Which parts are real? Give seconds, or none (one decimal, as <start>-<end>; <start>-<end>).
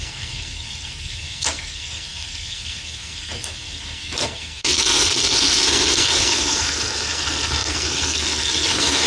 none